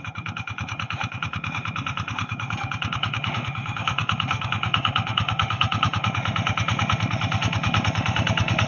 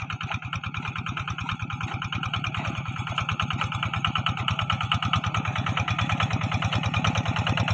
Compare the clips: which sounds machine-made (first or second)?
first